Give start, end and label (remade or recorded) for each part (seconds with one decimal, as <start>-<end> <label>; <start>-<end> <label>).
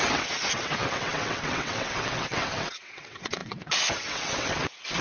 0.0-5.0 remade